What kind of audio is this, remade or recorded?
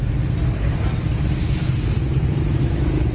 recorded